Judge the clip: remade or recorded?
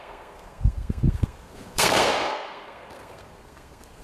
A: remade